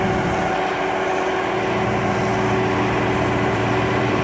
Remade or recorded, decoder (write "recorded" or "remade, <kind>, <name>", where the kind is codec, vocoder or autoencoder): remade, vocoder, BigVGAN v2